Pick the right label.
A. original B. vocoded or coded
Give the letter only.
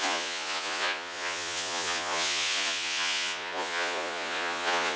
B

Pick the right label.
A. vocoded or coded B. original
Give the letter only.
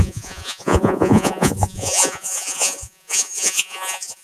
A